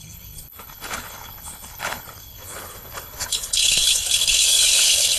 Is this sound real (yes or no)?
no